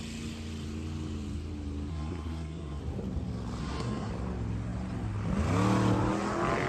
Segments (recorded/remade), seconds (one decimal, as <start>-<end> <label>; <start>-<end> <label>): 0.0-1.9 recorded; 1.9-2.8 remade; 2.8-3.6 recorded; 3.6-4.1 remade; 4.1-6.7 recorded